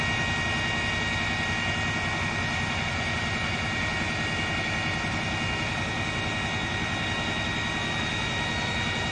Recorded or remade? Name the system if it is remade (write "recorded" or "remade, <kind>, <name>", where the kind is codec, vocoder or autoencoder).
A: recorded